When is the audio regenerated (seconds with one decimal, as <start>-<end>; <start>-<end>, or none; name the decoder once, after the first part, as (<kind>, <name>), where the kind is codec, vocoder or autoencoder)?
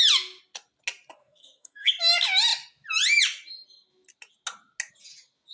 1.2-2.0 (codec, SNAC)